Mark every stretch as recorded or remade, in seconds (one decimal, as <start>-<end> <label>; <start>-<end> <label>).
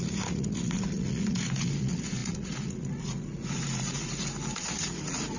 0.0-5.4 remade